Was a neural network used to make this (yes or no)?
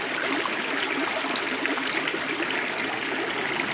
no